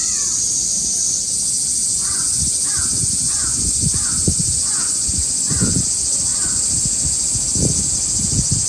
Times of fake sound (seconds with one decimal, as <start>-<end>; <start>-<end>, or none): 1.9-5.7